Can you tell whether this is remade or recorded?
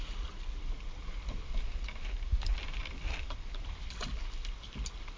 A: recorded